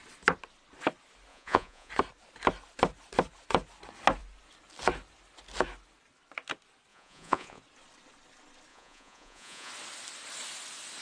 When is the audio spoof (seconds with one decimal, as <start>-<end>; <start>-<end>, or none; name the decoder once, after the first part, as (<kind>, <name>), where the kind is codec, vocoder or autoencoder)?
1.3-1.9 (vocoder, Vocos); 6.9-7.6; 8.7-9.7